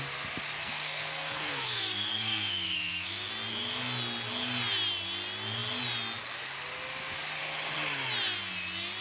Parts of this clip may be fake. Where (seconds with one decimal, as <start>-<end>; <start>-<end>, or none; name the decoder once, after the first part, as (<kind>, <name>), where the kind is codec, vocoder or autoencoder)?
0.6-3.3 (codec, SNAC)